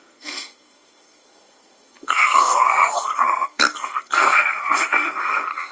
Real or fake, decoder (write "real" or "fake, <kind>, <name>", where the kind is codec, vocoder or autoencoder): fake, codec, SNAC